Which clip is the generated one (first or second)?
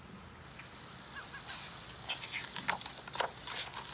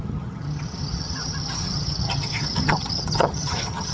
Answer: second